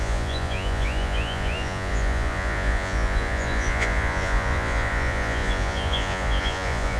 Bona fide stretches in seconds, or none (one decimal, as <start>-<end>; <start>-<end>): none